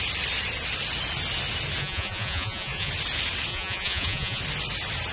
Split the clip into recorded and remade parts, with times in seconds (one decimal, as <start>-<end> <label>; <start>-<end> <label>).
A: 0.0-1.8 recorded; 1.8-2.9 remade; 2.9-3.5 recorded; 3.5-4.4 remade; 4.4-5.1 recorded